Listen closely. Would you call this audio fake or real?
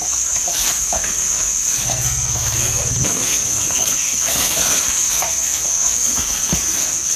fake